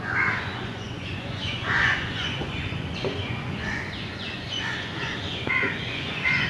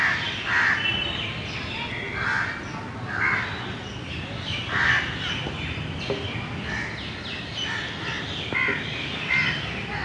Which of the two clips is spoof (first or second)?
first